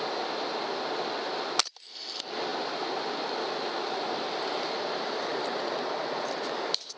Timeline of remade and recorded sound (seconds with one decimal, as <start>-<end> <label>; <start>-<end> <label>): 0.0-7.0 recorded